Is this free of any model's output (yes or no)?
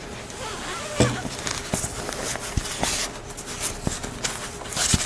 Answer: yes